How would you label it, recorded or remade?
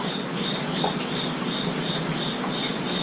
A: recorded